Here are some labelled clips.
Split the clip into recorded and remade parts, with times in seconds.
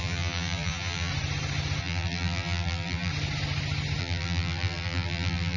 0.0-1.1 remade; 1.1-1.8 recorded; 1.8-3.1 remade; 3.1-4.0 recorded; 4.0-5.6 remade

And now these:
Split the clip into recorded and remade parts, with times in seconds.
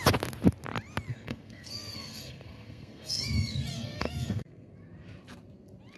0.0-1.1 recorded; 1.1-4.7 remade; 4.7-6.0 recorded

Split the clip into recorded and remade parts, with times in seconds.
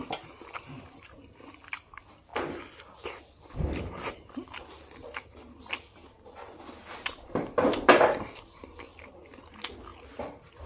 0.0-8.6 recorded; 8.6-9.5 remade; 9.5-9.9 recorded; 9.9-10.7 remade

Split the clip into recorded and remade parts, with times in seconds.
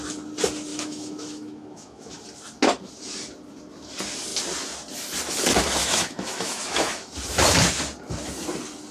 0.0-0.7 recorded; 0.7-2.1 remade; 2.1-5.8 recorded; 5.8-7.1 remade; 7.1-8.9 recorded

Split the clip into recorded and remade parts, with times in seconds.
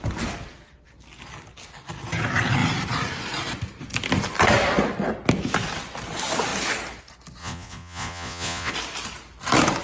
0.0-7.4 recorded; 7.4-8.7 remade; 8.7-9.8 recorded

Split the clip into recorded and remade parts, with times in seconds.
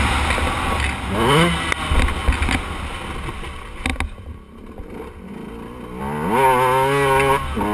0.0-7.7 recorded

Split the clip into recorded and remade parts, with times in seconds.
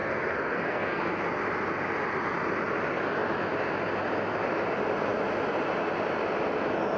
0.0-1.0 remade; 1.0-7.0 recorded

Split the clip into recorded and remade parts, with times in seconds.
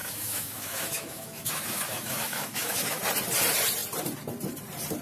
0.0-3.0 remade; 3.0-5.0 recorded